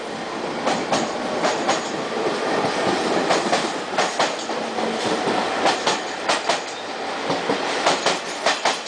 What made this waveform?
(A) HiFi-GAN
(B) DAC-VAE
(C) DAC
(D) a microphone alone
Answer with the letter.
D